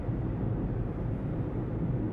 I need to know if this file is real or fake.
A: real